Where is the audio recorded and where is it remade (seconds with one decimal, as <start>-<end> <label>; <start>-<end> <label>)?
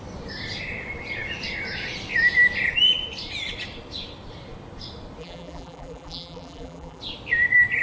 0.0-5.2 recorded; 5.2-7.0 remade; 7.0-7.8 recorded